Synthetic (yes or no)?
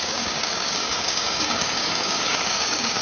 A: yes